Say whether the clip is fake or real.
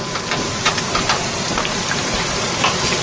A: fake